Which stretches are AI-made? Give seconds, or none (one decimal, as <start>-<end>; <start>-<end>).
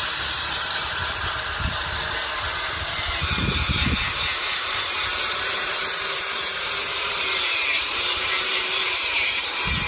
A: 0.0-1.0; 3.0-9.9